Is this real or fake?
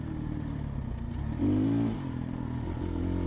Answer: real